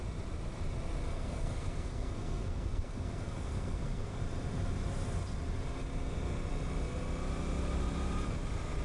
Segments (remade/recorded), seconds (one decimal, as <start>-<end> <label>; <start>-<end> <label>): 0.0-1.1 recorded; 1.1-4.2 remade; 4.2-8.8 recorded